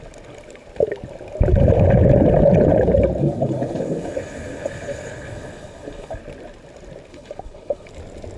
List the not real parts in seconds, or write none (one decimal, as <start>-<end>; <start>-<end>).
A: 3.2-6.2; 7.1-7.9